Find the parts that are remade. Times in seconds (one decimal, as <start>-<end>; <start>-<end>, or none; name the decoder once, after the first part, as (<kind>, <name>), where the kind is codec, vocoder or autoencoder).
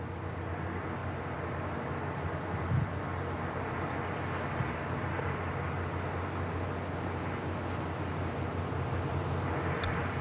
none